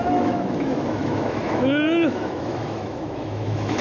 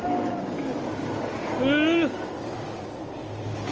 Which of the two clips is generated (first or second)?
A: first